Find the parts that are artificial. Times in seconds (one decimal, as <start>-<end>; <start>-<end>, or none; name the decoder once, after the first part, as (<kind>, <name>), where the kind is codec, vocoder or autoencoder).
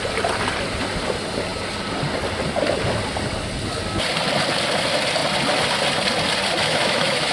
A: 6.6-7.3 (autoencoder, DAC-VAE)